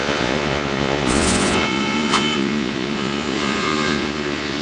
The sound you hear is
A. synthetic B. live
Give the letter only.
A